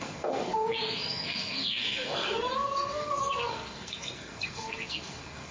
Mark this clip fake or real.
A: fake